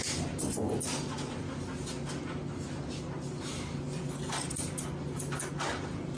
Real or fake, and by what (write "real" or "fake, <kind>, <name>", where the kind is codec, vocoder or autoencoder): real